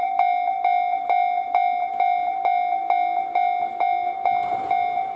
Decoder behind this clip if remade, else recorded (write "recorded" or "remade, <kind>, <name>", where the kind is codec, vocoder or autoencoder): recorded